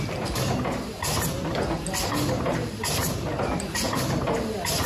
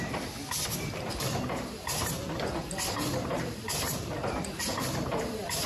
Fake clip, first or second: second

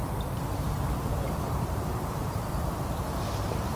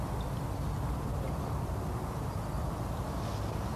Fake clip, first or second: first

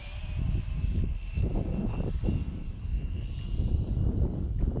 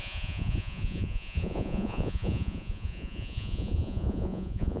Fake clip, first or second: second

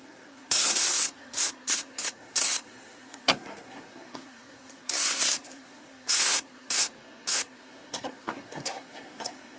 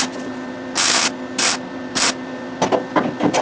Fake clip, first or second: first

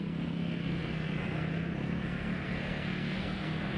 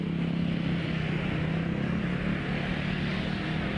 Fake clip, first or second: first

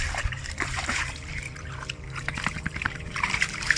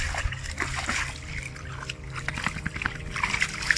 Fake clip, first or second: first